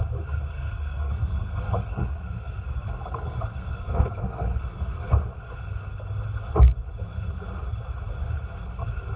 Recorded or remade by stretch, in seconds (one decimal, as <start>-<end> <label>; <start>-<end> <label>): 0.0-0.5 recorded; 0.5-5.1 remade; 5.1-9.2 recorded

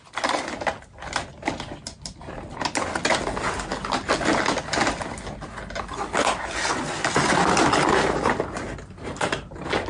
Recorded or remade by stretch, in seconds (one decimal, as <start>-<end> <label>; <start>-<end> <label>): 0.0-9.9 recorded

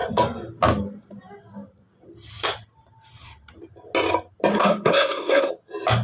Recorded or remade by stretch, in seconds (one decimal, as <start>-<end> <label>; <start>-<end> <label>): 0.0-4.5 recorded; 4.5-5.5 remade; 5.5-6.0 recorded

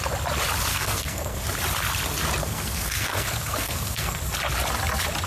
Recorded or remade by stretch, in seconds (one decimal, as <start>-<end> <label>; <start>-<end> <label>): 0.0-0.7 recorded; 0.7-1.4 remade; 1.4-2.4 recorded; 2.4-4.2 remade; 4.2-5.3 recorded

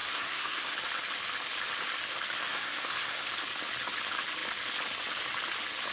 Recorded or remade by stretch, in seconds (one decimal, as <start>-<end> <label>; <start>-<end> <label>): 0.0-0.7 remade; 0.7-2.5 recorded; 2.5-3.3 remade; 3.3-5.9 recorded

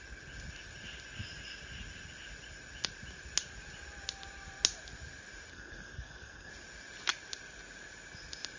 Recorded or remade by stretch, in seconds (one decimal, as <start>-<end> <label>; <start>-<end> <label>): 0.0-5.5 recorded; 5.5-6.5 remade; 6.5-8.6 recorded

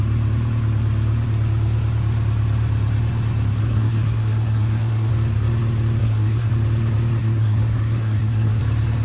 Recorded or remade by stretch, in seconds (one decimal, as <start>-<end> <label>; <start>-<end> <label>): 0.0-3.6 recorded; 3.6-5.1 remade; 5.1-6.0 recorded; 6.0-6.5 remade; 6.5-7.2 recorded; 7.2-8.6 remade; 8.6-9.0 recorded

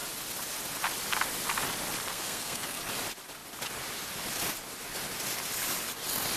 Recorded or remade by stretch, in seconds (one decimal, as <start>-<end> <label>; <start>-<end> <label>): 0.0-2.1 recorded; 2.1-2.8 remade; 2.8-6.4 recorded